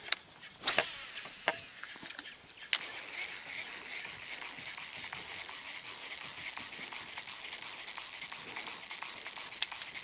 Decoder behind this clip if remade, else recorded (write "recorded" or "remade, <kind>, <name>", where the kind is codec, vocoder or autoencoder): recorded